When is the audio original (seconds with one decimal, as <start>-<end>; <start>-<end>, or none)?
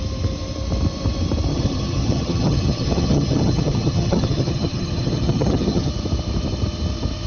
0.0-1.5; 5.9-7.3